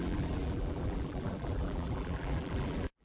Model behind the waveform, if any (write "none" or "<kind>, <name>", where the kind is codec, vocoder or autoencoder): vocoder, BigVGAN v2